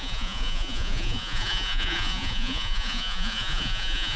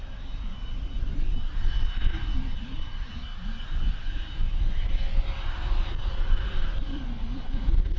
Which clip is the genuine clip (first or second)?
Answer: second